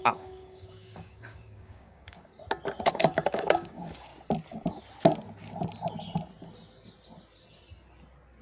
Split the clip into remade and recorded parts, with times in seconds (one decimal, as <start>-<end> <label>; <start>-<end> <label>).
0.0-2.3 remade; 2.3-2.9 recorded; 2.9-4.1 remade; 4.1-8.4 recorded